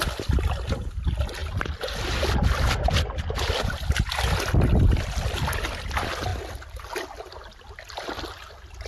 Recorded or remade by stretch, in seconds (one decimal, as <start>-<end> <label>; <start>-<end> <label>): 0.0-8.9 recorded